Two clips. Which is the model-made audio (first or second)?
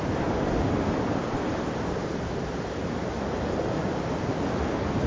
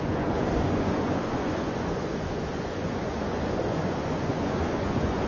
second